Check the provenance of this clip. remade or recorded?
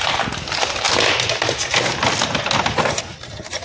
recorded